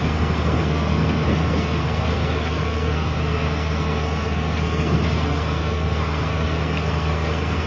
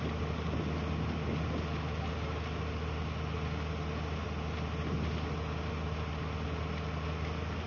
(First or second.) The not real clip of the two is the first